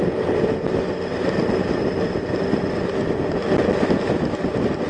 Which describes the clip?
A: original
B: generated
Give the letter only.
A